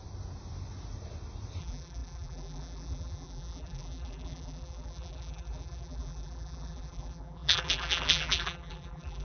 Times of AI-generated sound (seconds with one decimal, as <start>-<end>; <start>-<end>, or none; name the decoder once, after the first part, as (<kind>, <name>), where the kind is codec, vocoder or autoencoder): 1.6-9.2 (vocoder, BigVGAN v2)